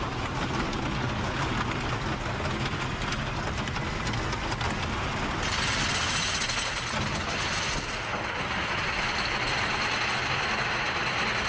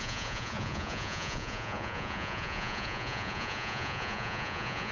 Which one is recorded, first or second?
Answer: first